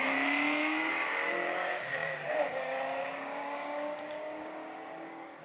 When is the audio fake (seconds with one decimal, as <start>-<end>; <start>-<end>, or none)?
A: 0.0-5.4